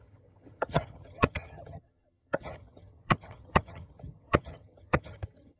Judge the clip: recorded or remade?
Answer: remade